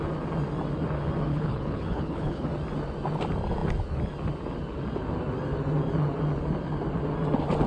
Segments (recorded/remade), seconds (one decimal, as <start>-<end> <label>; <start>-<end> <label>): 0.0-1.3 recorded; 1.3-2.5 remade; 2.5-7.7 recorded

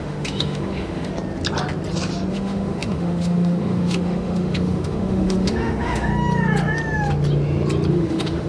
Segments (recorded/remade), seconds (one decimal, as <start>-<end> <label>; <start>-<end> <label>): 0.0-1.1 remade; 1.1-2.3 recorded; 2.3-6.1 remade; 6.1-7.9 recorded; 7.9-8.5 remade

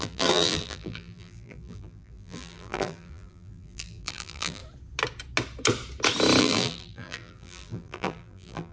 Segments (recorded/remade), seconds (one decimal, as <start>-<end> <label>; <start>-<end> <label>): 0.0-4.6 remade; 4.6-6.4 recorded; 6.4-8.7 remade

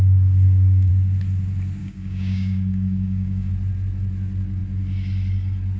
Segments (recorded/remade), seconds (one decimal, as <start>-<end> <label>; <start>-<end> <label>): 0.0-0.9 remade; 0.9-1.8 recorded; 1.8-3.5 remade; 3.5-5.8 recorded

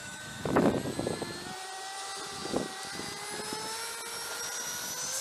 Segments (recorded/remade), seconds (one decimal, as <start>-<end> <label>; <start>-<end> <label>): 0.0-0.7 remade; 0.7-5.2 recorded

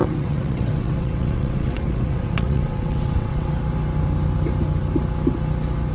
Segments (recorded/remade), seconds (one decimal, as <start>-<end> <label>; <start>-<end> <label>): 0.0-3.5 remade; 3.5-5.9 recorded